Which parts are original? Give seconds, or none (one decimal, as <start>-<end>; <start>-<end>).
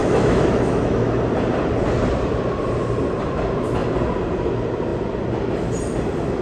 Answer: 1.1-6.4